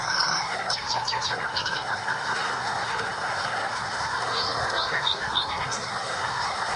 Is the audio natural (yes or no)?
no